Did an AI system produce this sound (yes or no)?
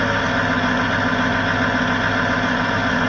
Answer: no